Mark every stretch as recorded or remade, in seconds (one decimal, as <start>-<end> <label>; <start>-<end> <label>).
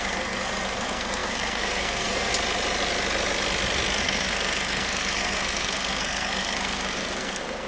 0.0-2.3 remade; 2.3-4.0 recorded; 4.0-7.7 remade